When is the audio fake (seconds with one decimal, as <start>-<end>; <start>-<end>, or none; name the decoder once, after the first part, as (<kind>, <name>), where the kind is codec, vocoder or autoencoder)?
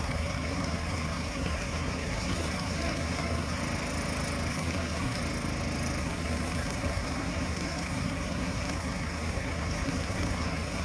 0.0-3.6 (codec, SNAC); 4.5-5.2; 6.0-10.8